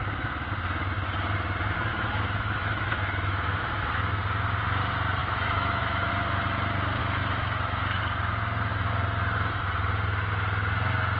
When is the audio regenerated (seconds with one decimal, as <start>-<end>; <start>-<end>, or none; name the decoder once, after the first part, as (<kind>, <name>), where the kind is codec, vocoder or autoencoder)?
1.9-4.2 (autoencoder, DAC-VAE); 5.2-6.1; 7.0-8.0